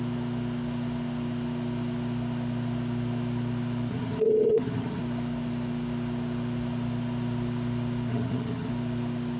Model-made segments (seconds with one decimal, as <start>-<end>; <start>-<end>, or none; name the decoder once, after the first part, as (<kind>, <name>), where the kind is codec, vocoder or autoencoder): 3.9-5.0 (vocoder, HiFi-GAN); 8.1-8.7